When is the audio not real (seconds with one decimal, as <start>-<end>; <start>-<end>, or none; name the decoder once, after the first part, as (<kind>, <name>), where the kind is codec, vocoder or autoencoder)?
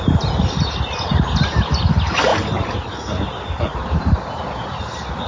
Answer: none